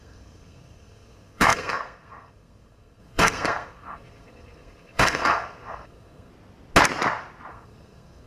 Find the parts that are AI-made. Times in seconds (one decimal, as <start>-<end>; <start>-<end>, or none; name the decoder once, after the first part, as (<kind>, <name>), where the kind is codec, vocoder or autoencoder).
0.0-6.3 (codec, SNAC); 7.5-8.3